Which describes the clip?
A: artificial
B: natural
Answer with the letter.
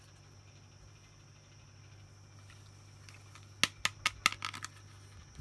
B